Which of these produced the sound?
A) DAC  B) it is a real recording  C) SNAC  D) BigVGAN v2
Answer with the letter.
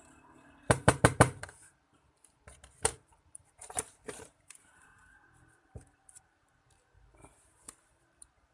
D